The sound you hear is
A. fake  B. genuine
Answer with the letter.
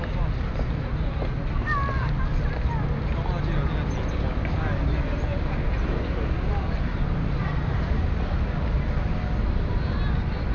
B